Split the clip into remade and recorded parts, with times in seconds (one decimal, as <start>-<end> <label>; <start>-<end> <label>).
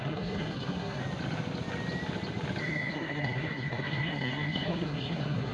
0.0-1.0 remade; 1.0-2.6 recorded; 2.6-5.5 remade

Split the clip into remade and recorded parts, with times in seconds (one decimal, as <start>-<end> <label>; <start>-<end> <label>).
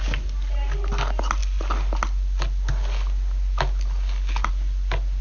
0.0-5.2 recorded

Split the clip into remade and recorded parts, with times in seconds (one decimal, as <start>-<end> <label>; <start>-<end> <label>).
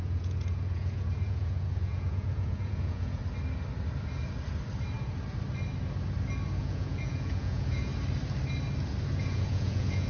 0.0-3.2 remade; 3.2-6.6 recorded; 6.6-7.9 remade; 7.9-9.2 recorded; 9.2-10.1 remade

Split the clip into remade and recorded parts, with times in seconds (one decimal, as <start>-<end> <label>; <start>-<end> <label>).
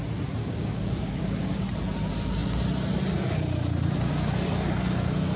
0.0-0.4 recorded; 0.4-1.6 remade; 1.6-5.4 recorded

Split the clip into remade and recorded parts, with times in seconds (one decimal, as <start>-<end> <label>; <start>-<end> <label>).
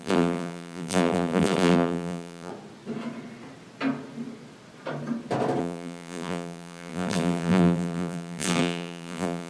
0.0-2.5 remade; 2.5-5.6 recorded; 5.6-9.5 remade